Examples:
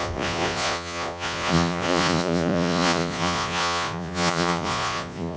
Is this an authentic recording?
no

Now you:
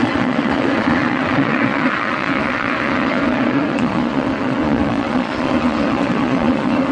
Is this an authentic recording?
no